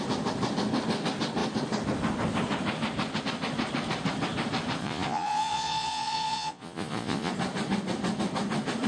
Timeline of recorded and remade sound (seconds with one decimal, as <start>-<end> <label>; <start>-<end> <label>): 0.0-4.8 recorded; 4.8-7.3 remade; 7.3-8.9 recorded